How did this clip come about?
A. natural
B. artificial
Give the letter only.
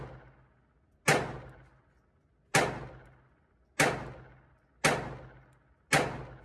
A